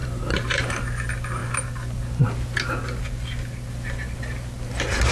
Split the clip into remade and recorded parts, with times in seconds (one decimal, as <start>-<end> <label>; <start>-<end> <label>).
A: 0.0-0.8 remade; 0.8-5.1 recorded